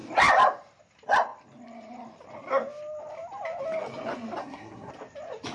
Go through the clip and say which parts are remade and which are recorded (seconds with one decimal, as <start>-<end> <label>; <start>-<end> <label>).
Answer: 0.0-4.4 recorded; 4.4-4.9 remade; 4.9-5.5 recorded